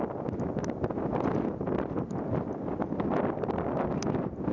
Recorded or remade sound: recorded